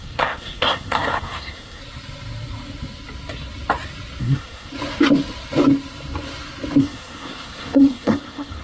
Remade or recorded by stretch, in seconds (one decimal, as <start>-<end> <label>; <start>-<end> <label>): 0.0-1.8 remade; 1.8-4.2 recorded; 4.2-4.7 remade; 4.7-6.8 recorded; 6.8-8.6 remade